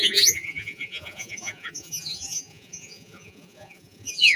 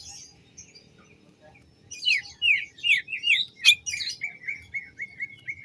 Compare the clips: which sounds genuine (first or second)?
second